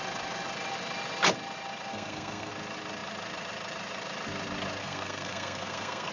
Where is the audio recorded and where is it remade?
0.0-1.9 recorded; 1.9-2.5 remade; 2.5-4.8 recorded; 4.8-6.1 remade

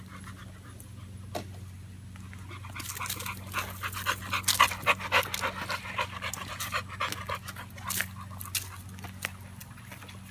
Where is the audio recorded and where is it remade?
0.0-10.3 recorded